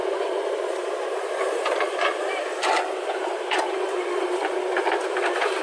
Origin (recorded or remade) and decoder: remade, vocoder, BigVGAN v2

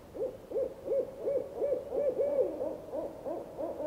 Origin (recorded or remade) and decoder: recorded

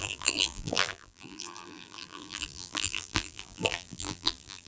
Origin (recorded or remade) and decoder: remade, vocoder, BigVGAN v2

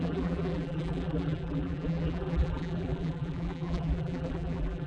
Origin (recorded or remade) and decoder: remade, vocoder, BigVGAN v2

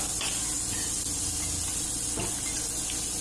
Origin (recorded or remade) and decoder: recorded